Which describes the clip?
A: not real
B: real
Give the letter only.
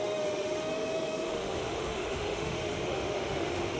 A